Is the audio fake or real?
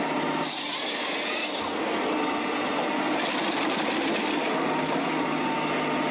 real